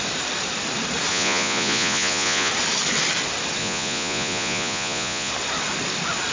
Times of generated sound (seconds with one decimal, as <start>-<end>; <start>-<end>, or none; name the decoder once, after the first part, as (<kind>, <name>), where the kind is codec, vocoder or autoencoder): 1.1-2.5 (vocoder, Vocos); 3.6-5.3